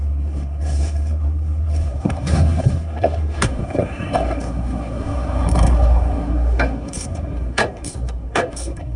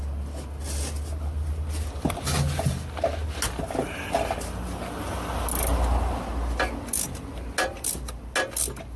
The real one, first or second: second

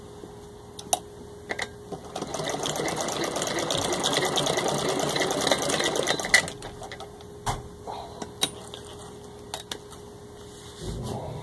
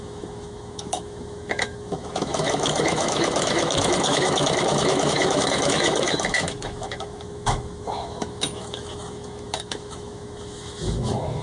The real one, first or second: first